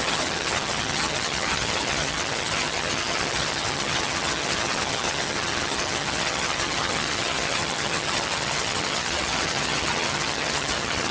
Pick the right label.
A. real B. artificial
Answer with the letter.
B